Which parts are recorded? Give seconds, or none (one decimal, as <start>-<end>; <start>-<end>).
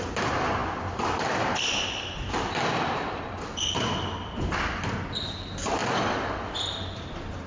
0.0-0.6; 4.9-7.5